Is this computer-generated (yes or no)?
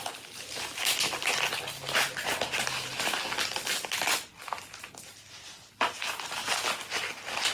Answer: no